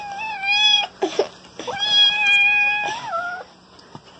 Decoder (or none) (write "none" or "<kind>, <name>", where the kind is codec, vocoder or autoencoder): none